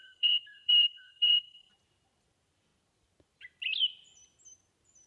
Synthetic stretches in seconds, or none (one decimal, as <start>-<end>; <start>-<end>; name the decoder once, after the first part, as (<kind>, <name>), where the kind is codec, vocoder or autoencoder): 0.0-1.7 (codec, SNAC)